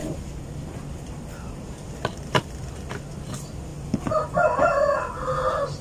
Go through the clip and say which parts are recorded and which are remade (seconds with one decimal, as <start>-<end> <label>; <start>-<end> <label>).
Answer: 0.0-5.8 recorded